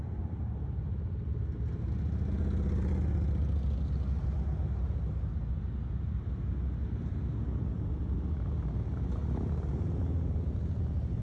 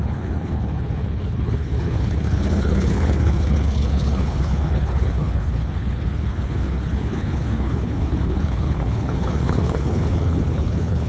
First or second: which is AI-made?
second